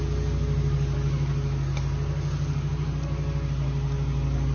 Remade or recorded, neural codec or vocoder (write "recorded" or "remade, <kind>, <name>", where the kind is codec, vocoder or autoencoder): recorded